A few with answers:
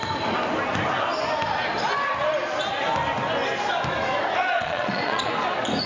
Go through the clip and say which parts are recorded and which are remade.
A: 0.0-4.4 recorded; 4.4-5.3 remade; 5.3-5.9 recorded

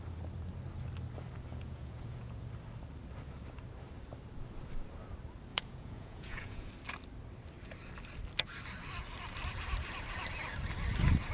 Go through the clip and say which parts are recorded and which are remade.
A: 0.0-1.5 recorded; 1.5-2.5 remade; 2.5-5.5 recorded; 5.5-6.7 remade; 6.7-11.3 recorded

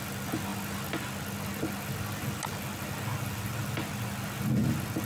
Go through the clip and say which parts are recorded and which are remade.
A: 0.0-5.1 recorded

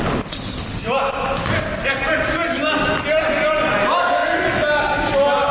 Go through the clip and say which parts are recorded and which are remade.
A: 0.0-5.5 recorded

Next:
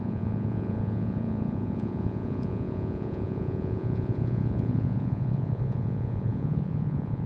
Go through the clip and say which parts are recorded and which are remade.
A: 0.0-7.3 remade

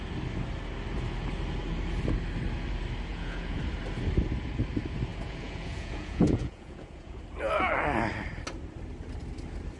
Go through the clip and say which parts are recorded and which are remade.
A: 0.0-3.1 recorded; 3.1-3.6 remade; 3.6-5.1 recorded; 5.1-7.2 remade; 7.2-9.8 recorded

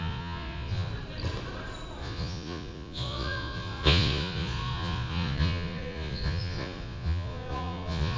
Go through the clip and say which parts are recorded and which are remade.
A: 0.0-0.9 remade; 0.9-2.0 recorded; 2.0-8.2 remade